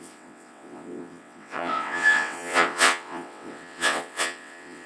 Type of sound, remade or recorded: remade